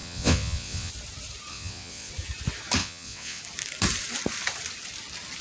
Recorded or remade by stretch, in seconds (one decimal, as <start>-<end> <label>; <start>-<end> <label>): 0.0-0.9 remade; 0.9-1.5 recorded; 1.5-2.1 remade; 2.1-2.8 recorded; 2.8-3.4 remade; 3.4-5.4 recorded